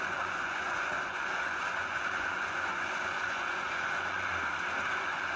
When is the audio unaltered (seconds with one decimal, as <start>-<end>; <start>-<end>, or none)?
4.3-4.9